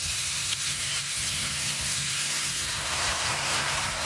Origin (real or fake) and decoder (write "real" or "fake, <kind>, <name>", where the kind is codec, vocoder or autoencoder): fake, codec, SNAC